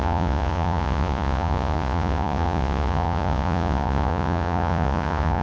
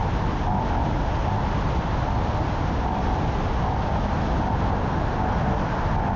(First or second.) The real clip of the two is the second